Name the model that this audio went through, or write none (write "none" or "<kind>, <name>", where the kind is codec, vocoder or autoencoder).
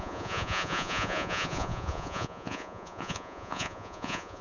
vocoder, Vocos